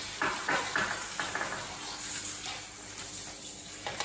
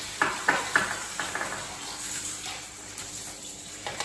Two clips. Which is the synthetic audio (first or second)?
second